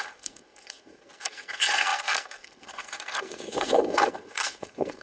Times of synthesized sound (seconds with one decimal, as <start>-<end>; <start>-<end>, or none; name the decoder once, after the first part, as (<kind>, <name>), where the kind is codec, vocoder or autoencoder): 0.0-5.0 (codec, SNAC)